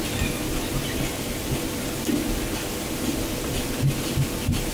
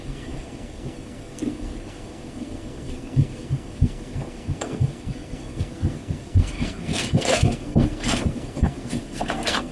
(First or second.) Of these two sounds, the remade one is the second